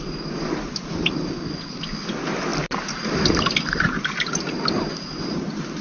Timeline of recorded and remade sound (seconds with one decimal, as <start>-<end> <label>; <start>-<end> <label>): 0.0-5.8 recorded